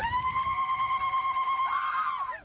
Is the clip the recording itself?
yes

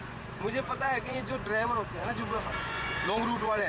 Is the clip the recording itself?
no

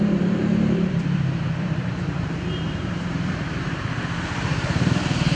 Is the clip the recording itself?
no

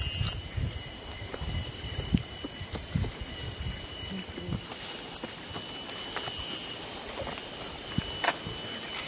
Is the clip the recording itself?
yes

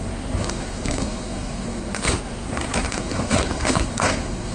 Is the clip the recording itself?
no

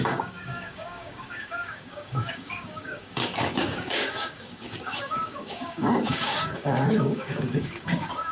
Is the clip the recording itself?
no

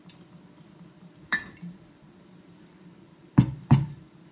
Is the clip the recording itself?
no